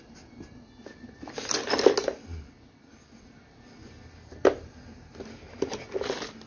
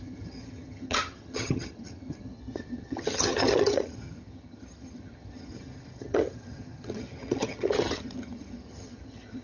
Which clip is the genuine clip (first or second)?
first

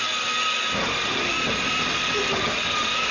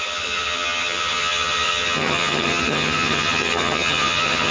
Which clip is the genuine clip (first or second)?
first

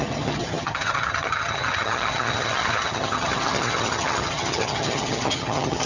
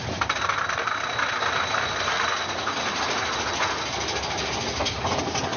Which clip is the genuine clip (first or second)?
second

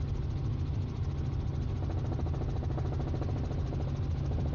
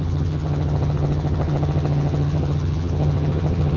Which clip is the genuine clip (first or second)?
first